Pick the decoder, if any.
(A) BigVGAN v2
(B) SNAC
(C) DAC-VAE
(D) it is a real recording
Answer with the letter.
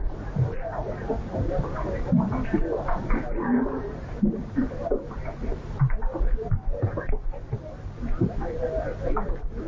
A